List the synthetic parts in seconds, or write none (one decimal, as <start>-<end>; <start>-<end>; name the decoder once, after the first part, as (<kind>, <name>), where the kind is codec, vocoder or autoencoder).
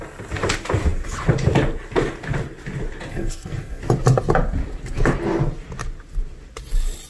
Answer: 3.1-3.8 (codec, SNAC)